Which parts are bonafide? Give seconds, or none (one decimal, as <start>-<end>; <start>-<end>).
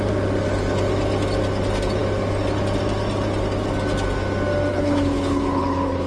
0.0-4.7